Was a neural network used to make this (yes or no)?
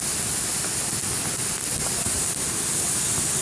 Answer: no